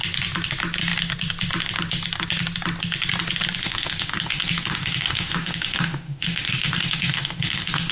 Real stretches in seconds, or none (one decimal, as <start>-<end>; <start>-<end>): 0.0-3.6